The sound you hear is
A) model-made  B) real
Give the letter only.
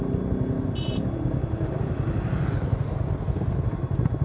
B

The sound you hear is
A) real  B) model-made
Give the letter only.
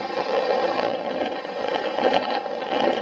B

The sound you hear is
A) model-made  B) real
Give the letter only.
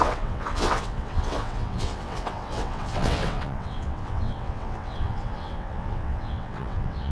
A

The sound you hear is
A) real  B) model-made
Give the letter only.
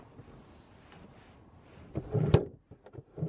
A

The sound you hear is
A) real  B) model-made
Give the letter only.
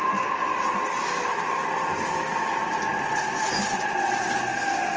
A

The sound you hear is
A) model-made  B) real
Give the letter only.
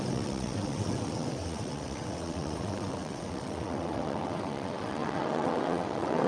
A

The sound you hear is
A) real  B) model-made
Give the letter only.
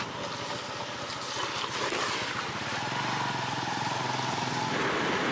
A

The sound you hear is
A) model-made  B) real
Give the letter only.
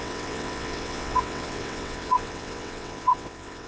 A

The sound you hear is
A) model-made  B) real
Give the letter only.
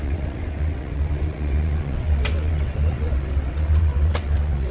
A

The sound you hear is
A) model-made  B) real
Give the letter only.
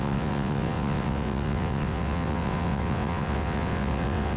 A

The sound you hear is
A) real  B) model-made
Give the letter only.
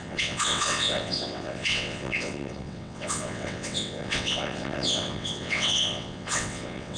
B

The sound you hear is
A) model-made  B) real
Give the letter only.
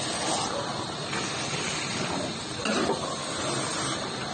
B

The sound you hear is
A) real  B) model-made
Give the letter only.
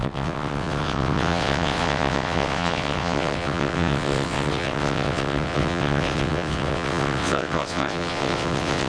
B